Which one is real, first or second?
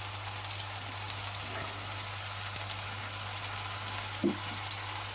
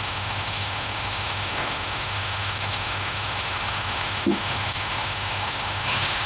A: first